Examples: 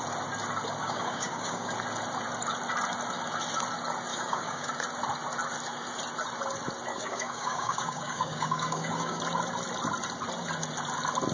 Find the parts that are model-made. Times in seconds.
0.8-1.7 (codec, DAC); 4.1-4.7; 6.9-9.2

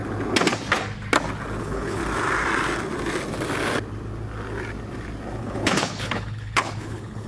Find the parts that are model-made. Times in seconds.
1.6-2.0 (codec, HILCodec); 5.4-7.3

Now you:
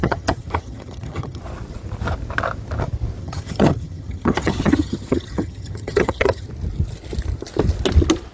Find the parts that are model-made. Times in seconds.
0.0-1.4 (vocoder, HiFi-GAN); 3.2-6.5